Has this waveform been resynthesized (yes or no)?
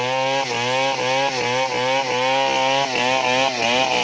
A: no